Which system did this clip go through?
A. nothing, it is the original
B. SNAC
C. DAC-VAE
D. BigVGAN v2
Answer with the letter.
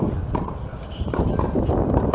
D